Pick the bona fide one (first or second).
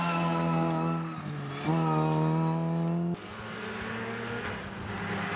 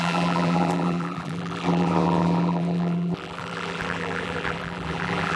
first